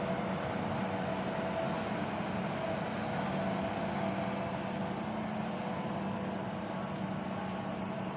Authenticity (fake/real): real